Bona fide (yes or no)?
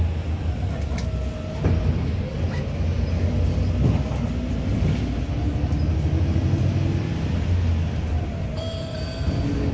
yes